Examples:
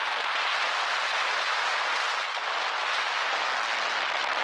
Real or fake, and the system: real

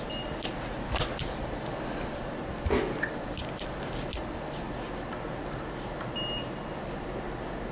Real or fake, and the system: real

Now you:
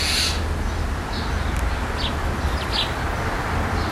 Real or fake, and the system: real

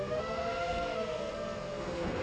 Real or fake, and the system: fake, codec, SNAC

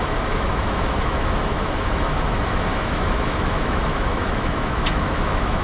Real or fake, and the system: fake, autoencoder, DAC-VAE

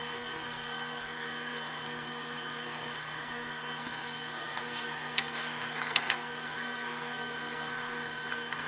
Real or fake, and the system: fake, codec, SNAC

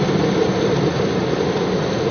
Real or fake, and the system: real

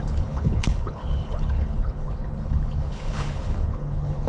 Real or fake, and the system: fake, codec, HILCodec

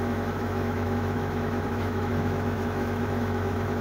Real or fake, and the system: fake, autoencoder, DAC-VAE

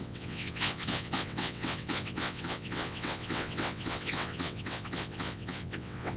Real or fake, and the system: fake, vocoder, WaveNeXt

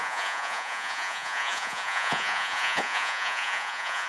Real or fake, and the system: fake, vocoder, Vocos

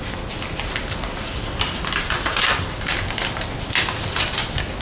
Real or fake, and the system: real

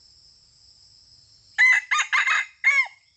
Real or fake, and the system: real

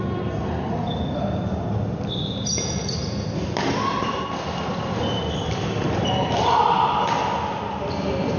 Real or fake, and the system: real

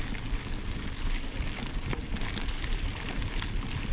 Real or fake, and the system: real